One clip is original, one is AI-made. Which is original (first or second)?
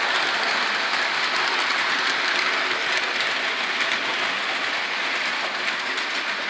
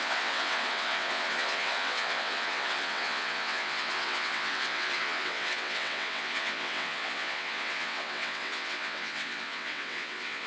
first